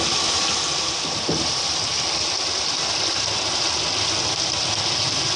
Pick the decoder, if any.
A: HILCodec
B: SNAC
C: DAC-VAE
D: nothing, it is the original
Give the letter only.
D